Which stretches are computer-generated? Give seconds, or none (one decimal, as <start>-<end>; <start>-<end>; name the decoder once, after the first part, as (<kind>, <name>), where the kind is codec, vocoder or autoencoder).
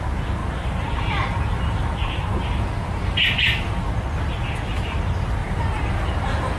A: 0.4-3.8 (vocoder, BigVGAN v2); 5.4-6.6